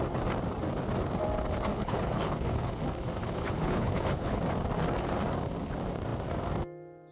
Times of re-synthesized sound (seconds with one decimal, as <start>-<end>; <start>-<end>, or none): 1.7-2.8; 3.2-4.4